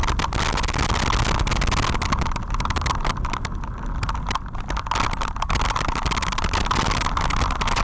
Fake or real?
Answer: real